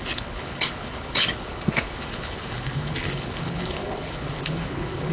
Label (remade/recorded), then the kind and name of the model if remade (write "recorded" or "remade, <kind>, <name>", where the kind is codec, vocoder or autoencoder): remade, codec, HILCodec